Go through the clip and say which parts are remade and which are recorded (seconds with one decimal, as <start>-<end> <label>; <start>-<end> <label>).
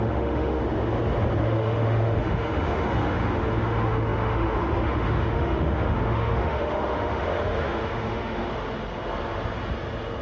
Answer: 0.0-0.6 remade; 0.6-1.4 recorded; 1.4-8.5 remade; 8.5-10.2 recorded